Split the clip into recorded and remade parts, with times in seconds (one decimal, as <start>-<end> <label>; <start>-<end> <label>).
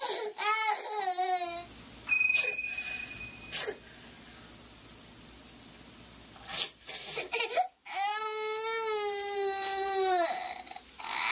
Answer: 0.0-11.3 recorded